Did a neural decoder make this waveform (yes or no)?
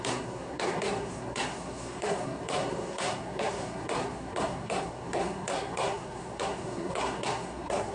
yes